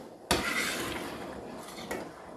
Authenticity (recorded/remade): recorded